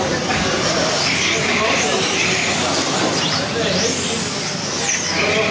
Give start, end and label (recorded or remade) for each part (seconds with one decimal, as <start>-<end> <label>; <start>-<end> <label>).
0.0-5.5 recorded